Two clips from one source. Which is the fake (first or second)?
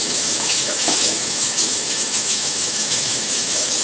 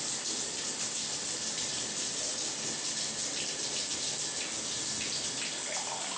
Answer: first